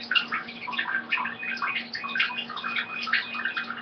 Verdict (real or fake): real